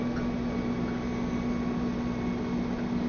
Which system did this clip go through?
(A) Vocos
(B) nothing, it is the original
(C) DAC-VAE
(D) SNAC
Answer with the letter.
B